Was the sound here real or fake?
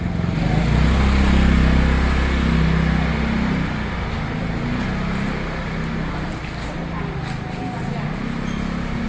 real